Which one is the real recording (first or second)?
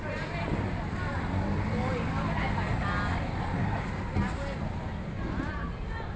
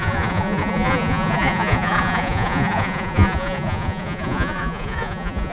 first